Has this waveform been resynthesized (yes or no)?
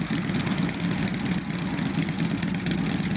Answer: no